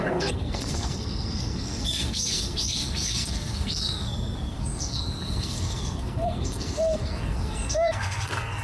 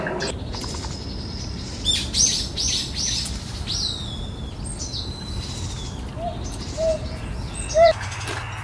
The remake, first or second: first